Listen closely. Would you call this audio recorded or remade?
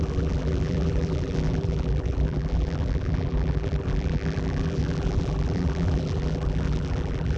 remade